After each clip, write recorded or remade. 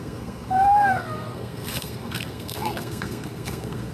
remade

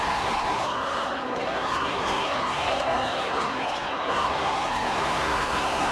remade